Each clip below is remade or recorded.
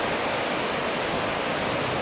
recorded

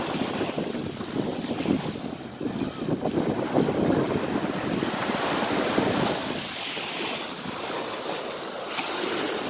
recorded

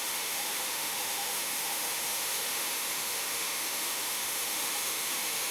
remade